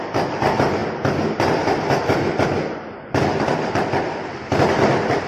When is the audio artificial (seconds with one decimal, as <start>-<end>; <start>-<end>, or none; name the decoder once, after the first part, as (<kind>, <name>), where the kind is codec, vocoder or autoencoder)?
none